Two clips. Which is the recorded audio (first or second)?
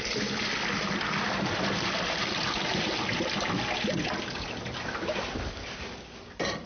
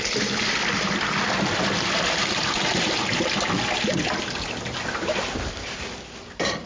first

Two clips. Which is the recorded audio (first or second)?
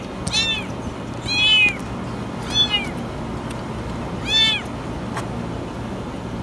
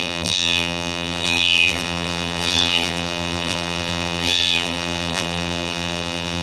first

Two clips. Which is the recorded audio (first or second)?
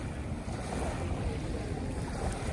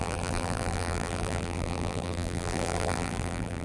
first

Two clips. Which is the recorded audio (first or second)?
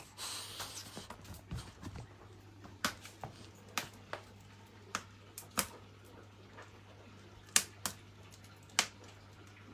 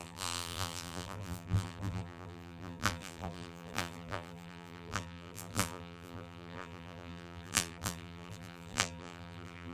first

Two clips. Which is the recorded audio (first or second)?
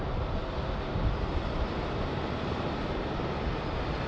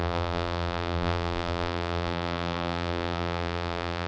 first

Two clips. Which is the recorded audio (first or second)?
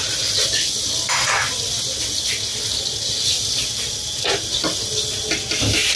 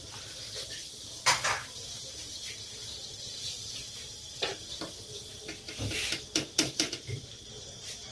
first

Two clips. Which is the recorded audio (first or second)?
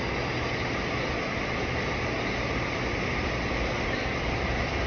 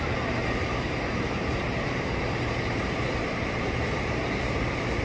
first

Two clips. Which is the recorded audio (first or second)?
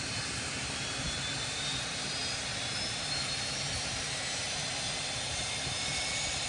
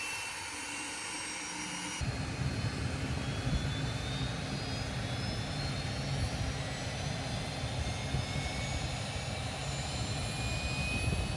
second